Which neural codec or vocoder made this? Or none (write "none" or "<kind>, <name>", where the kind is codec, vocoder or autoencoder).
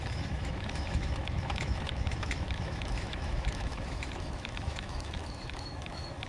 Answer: autoencoder, DAC-VAE